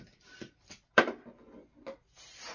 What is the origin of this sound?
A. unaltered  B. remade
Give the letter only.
A